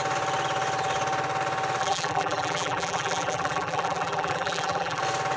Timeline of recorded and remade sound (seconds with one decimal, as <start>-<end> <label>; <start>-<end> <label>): 0.0-1.8 recorded; 1.8-5.0 remade; 5.0-5.4 recorded